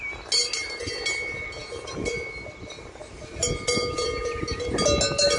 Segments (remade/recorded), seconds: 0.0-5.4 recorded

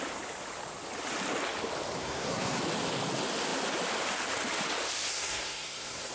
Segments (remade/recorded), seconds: 0.0-2.0 recorded; 2.0-2.6 remade; 2.6-5.1 recorded; 5.1-6.1 remade

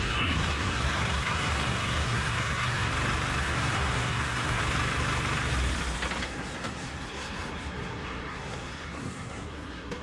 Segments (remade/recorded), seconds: 0.0-2.9 remade; 2.9-3.4 recorded; 3.4-4.6 remade; 4.6-6.2 recorded; 6.2-10.0 remade

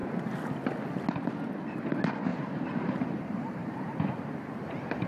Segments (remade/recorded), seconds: 0.0-2.3 recorded; 2.3-4.0 remade; 4.0-5.1 recorded